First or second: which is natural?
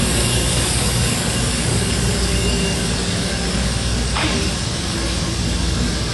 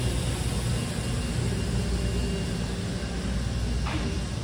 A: second